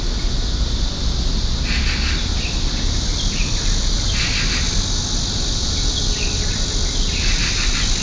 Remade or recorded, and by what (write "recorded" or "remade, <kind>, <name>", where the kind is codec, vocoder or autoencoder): remade, vocoder, BigVGAN v2